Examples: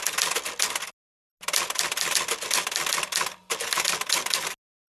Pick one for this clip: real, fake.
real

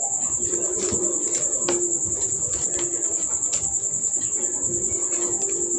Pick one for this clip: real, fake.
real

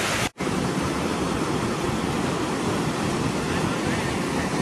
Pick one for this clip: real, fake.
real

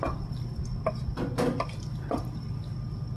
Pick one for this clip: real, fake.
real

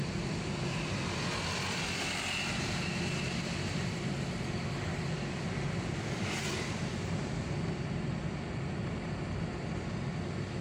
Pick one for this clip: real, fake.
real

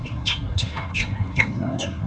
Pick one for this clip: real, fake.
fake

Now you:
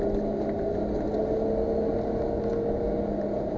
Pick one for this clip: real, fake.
real